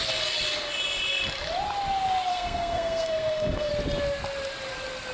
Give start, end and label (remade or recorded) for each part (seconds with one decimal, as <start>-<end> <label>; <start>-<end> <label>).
0.0-2.3 recorded; 2.3-3.7 remade; 3.7-5.1 recorded